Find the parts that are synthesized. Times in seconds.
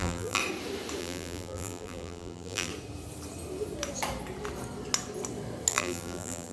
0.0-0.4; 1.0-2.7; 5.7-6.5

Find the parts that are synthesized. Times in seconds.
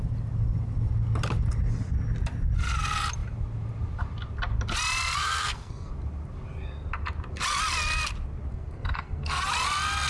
5.2-5.9; 8.5-9.4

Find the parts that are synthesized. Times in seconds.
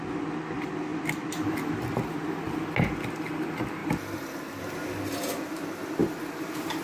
none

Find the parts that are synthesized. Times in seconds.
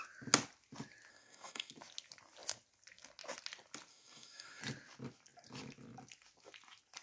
1.1-1.7; 3.9-4.6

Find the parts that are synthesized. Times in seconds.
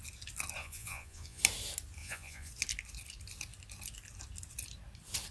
0.6-1.4; 2.0-2.5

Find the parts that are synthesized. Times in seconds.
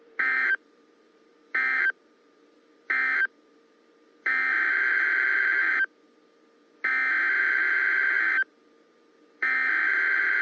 0.0-6.9; 7.4-10.4